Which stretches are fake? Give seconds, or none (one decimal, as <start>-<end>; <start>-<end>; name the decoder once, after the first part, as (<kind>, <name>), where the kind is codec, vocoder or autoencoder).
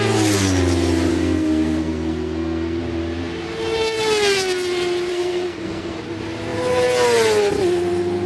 1.1-2.8 (codec, SNAC); 5.1-6.0